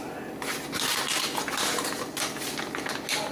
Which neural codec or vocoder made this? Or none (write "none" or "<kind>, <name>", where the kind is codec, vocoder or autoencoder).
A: none